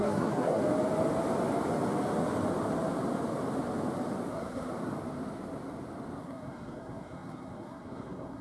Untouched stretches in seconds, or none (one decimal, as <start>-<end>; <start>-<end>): 0.6-4.3; 4.7-6.2